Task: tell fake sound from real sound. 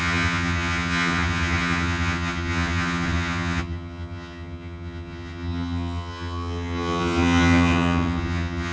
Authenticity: fake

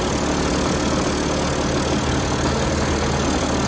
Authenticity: real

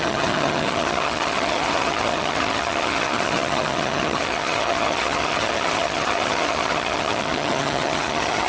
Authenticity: fake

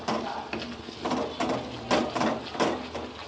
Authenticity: real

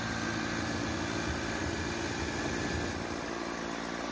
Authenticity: real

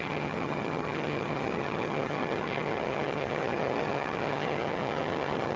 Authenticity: fake